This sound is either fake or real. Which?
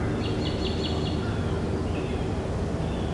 real